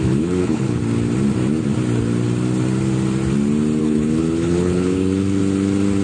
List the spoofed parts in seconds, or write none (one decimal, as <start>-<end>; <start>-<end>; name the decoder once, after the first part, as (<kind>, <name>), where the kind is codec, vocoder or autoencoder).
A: 0.0-0.8 (codec, HILCodec); 3.8-5.4